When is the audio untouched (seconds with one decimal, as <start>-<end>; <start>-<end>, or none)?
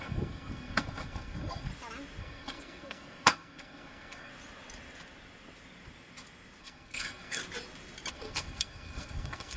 1.7-2.2; 4.3-6.6; 7.4-8.1